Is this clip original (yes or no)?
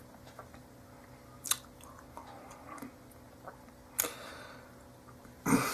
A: yes